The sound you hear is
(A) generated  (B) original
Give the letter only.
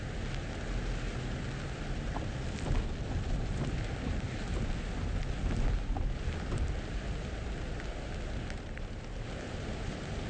B